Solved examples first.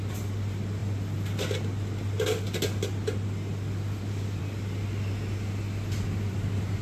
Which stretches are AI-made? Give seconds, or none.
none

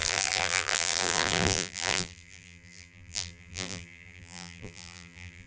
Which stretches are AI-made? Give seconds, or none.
0.0-5.5 (vocoder, BigVGAN v2)